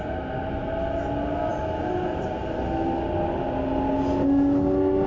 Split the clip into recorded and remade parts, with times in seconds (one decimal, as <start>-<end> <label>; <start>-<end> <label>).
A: 0.0-5.1 recorded